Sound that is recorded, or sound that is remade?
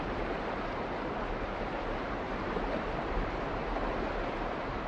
remade